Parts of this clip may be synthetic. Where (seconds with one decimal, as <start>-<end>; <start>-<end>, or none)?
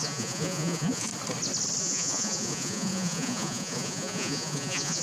0.0-1.1; 1.8-5.0